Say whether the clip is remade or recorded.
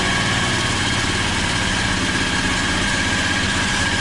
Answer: remade